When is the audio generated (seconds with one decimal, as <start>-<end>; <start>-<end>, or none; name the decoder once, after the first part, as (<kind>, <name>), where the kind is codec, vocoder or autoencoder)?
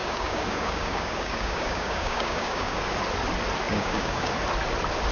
0.0-2.8 (codec, DAC); 3.7-4.3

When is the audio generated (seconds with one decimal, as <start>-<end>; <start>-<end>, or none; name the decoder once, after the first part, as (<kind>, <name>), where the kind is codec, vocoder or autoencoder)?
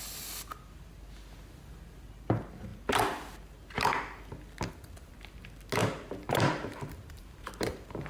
5.8-8.1 (vocoder, BigVGAN v2)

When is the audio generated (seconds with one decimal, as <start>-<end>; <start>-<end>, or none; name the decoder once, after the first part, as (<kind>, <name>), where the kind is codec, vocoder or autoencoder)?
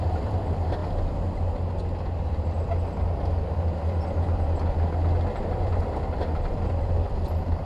0.0-0.8 (vocoder, BigVGAN v2); 5.4-7.7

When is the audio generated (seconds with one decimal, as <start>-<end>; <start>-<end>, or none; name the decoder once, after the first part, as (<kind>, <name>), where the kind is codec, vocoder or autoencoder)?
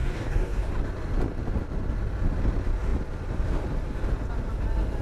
0.0-0.7 (codec, DAC)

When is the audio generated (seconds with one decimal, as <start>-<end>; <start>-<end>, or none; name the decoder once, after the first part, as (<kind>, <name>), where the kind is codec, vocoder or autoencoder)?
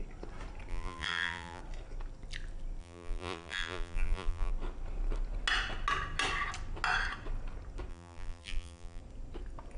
0.7-1.6 (vocoder, BigVGAN v2); 2.8-4.5; 7.9-9.0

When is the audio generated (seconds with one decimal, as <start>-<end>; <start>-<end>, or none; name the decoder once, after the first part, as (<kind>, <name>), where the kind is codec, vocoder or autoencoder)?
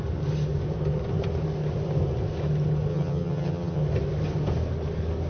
2.9-3.8 (vocoder, HiFi-GAN)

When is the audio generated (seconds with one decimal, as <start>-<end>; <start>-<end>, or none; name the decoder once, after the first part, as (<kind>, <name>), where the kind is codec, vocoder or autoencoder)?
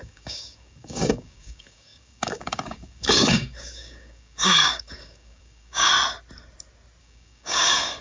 0.0-5.9 (codec, DAC); 7.0-8.0